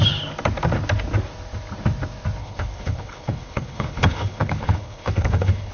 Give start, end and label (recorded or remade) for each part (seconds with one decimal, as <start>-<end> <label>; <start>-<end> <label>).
0.0-2.4 recorded; 2.4-5.7 remade